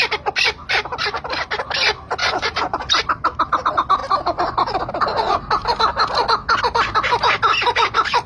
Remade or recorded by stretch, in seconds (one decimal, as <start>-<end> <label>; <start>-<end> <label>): 0.0-2.2 recorded; 2.2-2.9 remade; 2.9-8.3 recorded